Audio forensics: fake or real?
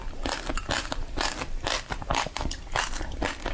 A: real